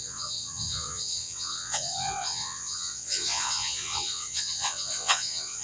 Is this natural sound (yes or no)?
no